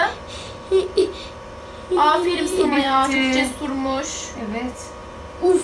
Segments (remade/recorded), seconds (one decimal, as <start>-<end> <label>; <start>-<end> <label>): 0.0-1.0 recorded; 1.0-4.4 remade; 4.4-5.0 recorded; 5.0-5.6 remade